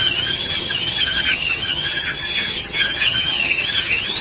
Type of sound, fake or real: fake